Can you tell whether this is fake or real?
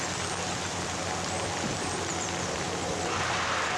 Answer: real